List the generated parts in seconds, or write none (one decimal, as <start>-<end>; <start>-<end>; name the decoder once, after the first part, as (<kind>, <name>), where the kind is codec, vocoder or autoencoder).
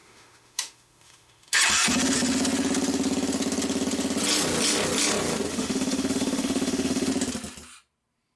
0.0-1.6 (autoencoder, DAC-VAE); 5.5-7.1